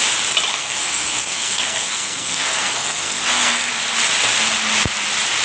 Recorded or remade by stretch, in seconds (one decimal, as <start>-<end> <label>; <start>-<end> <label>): 0.0-0.5 recorded; 0.5-3.7 remade; 3.7-5.4 recorded